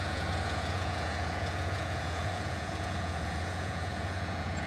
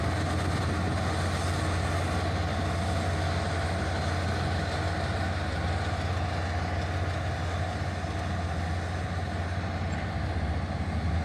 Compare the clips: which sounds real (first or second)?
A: second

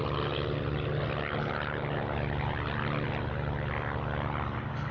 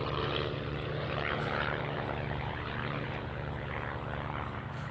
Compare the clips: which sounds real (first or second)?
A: first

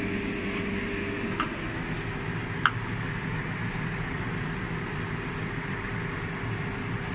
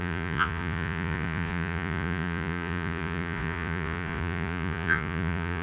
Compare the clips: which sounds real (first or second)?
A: first